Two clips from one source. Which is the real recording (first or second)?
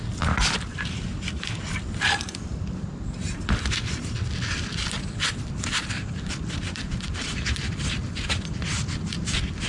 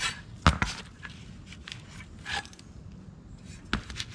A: second